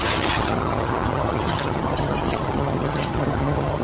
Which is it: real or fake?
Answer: fake